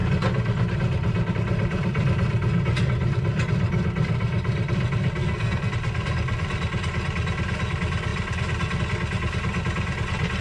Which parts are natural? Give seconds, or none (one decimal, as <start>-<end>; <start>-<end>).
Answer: 0.0-5.2; 5.7-10.4